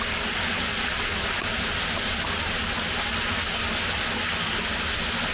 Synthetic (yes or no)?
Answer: no